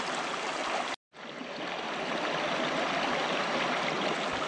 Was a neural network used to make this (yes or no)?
no